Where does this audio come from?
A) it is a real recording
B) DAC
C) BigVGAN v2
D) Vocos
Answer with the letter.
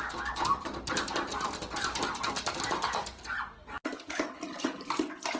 A